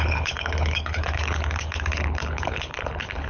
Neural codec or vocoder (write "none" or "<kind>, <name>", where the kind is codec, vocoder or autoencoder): codec, HILCodec